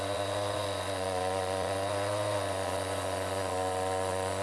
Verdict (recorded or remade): remade